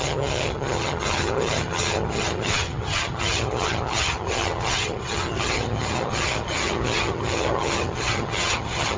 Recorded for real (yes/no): no